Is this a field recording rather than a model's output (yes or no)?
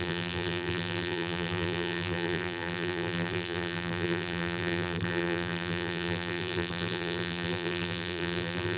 no